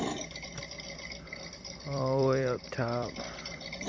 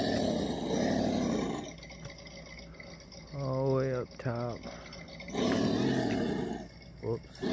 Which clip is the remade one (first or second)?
first